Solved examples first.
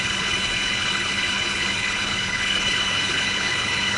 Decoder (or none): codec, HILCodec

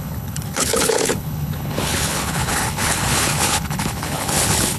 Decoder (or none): codec, HILCodec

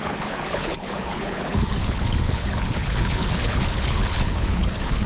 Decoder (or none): codec, HILCodec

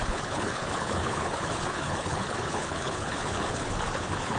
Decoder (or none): codec, HILCodec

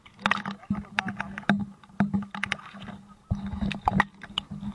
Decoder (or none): none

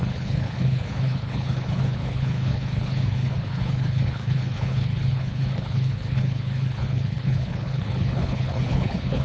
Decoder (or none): codec, HILCodec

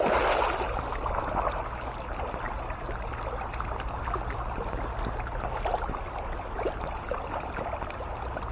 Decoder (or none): none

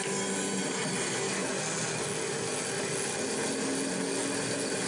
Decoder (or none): none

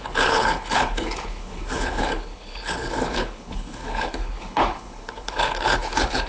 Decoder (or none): codec, HILCodec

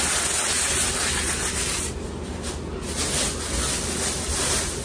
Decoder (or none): none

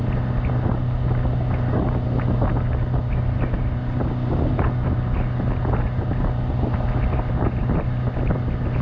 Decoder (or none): none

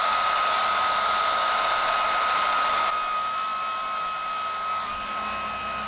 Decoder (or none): none